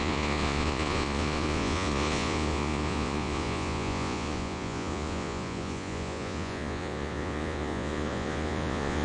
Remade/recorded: remade